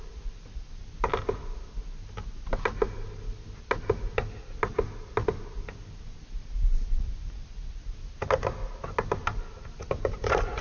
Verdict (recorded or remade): recorded